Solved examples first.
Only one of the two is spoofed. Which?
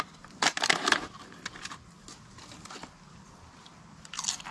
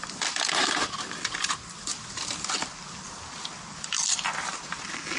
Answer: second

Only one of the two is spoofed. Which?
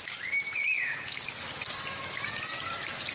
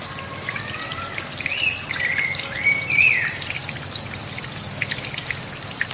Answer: second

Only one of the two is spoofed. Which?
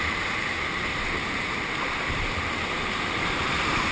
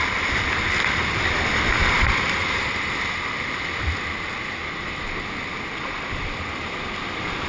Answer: first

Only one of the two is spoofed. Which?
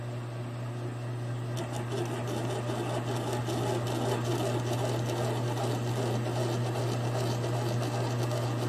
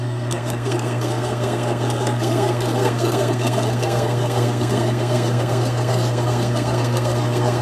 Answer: second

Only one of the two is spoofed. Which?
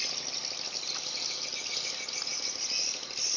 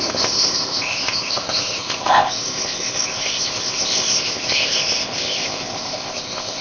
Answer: second